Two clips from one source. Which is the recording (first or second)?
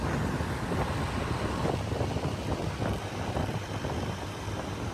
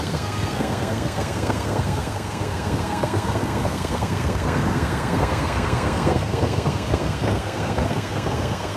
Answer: first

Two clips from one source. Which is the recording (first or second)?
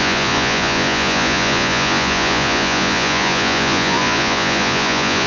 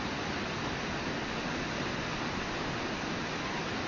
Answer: second